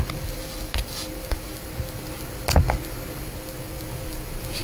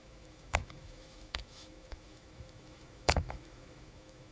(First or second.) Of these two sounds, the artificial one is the second